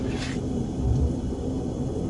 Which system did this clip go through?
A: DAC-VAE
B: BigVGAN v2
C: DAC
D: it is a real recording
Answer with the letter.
D